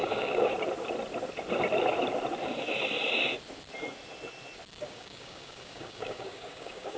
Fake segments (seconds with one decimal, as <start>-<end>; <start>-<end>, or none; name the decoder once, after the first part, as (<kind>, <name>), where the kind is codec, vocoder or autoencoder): 0.0-0.5 (codec, DAC); 4.7-7.0